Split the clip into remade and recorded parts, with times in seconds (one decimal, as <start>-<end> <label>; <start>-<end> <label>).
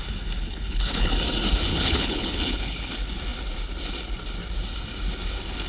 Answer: 0.0-0.4 recorded; 0.4-1.1 remade; 1.1-1.7 recorded; 1.7-2.9 remade; 2.9-5.7 recorded